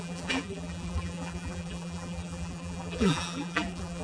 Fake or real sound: fake